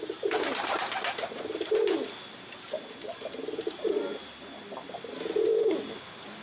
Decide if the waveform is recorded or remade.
recorded